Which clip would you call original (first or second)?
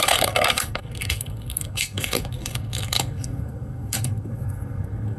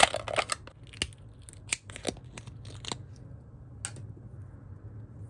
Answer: second